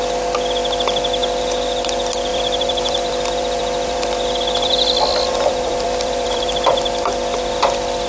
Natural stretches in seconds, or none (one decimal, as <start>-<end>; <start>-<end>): 0.0-2.3; 6.7-8.1